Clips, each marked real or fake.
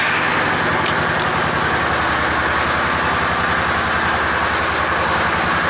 real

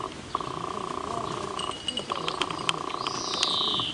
real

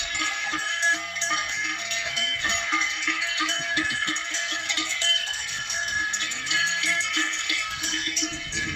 fake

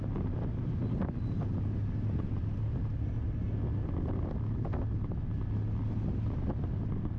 real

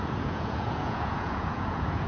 fake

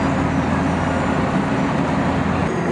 real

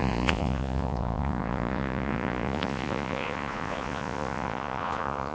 fake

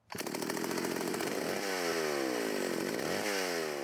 real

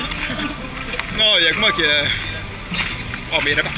real